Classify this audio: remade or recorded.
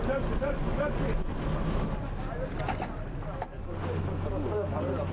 recorded